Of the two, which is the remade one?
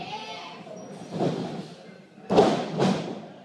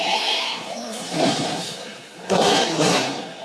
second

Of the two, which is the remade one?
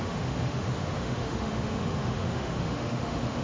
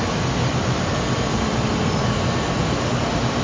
first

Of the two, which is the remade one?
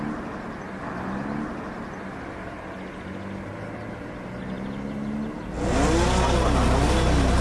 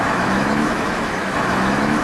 second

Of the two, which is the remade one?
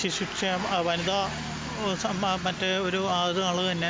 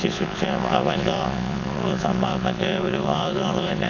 second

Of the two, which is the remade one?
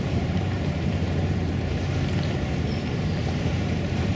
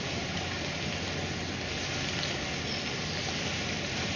first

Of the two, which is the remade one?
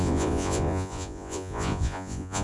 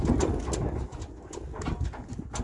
first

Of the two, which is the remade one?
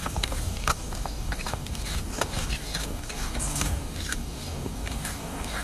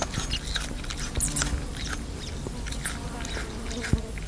first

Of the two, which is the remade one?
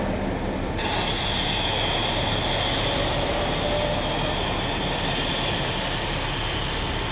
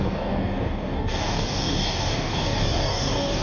second